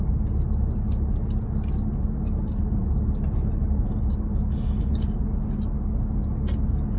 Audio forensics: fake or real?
real